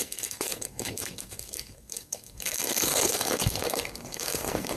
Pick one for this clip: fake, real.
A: fake